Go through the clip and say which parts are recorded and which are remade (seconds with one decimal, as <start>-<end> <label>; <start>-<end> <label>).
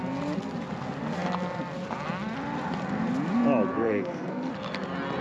0.0-3.7 recorded; 3.7-4.5 remade; 4.5-5.2 recorded